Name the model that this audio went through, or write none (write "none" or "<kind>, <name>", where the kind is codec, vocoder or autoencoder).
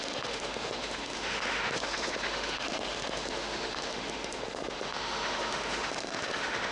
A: autoencoder, DAC-VAE